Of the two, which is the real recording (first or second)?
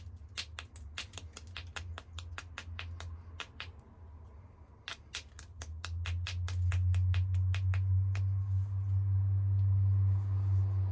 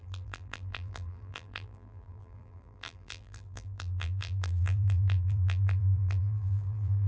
first